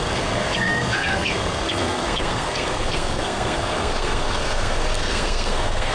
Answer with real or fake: fake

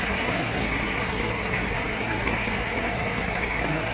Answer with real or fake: fake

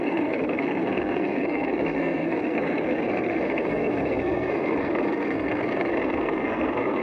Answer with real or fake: fake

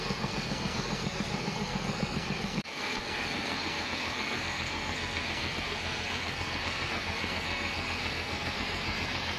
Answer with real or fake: fake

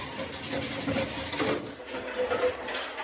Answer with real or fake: real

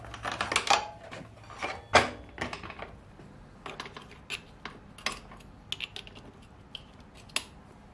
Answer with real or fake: real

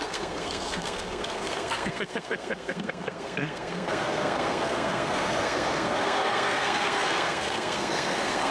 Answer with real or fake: fake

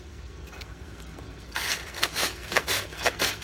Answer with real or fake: fake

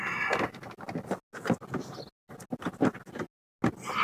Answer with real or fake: real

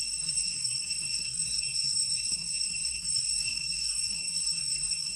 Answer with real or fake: fake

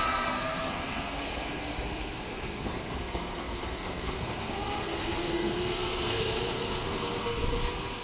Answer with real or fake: fake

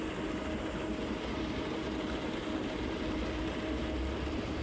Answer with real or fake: real